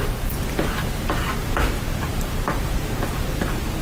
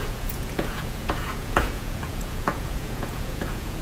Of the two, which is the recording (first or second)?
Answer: first